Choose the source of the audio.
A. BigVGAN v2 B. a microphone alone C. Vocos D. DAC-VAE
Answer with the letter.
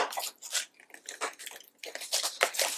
B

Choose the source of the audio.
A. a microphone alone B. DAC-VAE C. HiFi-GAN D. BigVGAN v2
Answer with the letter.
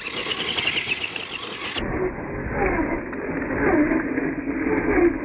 A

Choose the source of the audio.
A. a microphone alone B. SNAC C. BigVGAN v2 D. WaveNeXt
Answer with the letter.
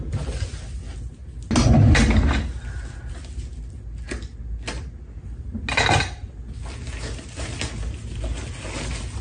A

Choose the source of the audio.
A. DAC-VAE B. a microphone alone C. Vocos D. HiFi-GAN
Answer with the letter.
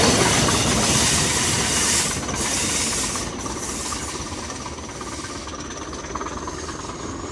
B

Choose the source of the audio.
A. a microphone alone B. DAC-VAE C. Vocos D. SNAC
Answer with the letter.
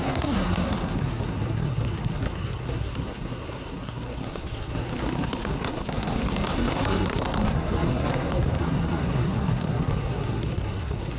D